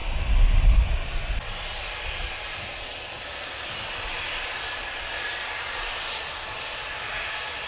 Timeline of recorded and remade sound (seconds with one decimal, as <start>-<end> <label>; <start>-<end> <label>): 0.0-7.7 recorded